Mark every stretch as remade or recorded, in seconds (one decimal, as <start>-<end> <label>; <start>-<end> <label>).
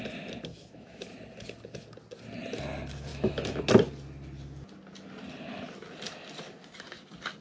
0.0-0.5 recorded; 0.5-1.1 remade; 1.1-3.1 recorded; 3.1-3.6 remade; 3.6-7.4 recorded